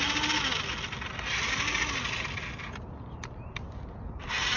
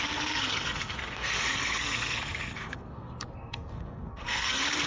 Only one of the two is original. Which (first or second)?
first